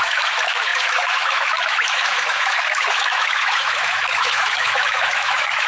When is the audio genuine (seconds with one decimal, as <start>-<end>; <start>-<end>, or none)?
none